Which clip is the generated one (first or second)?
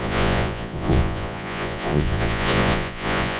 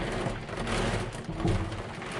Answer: first